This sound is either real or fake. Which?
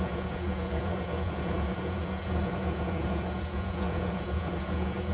fake